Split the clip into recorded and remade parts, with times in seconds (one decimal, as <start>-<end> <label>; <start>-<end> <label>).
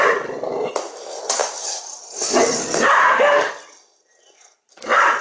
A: 0.0-3.0 recorded; 3.0-3.5 remade; 3.5-5.2 recorded